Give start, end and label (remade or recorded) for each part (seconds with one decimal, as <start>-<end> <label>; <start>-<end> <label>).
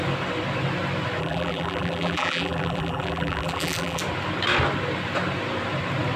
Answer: 0.0-1.2 recorded; 1.2-4.0 remade; 4.0-6.2 recorded